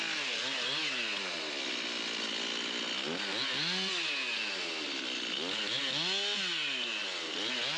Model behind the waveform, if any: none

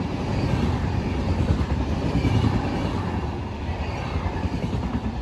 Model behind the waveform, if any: vocoder, BigVGAN v2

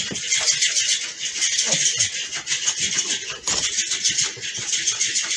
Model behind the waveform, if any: none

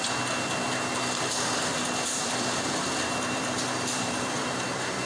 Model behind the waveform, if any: vocoder, BigVGAN v2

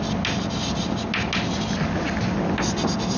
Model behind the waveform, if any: none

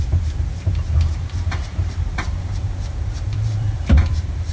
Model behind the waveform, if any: vocoder, BigVGAN v2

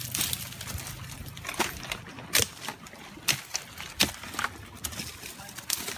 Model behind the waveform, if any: none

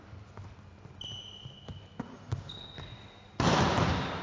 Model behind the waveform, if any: none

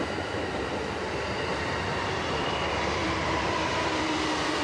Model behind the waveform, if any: vocoder, BigVGAN v2